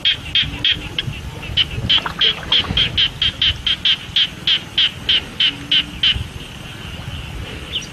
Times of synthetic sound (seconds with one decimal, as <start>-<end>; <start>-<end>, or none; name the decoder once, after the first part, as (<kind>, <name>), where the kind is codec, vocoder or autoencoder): none